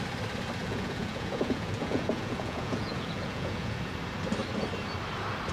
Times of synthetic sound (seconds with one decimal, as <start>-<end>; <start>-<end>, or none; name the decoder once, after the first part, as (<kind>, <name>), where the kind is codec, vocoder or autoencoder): 0.6-3.9 (vocoder, Vocos)